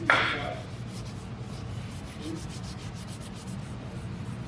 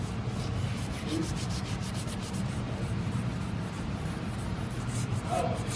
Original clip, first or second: first